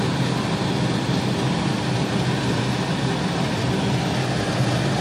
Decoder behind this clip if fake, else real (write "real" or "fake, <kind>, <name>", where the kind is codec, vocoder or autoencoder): real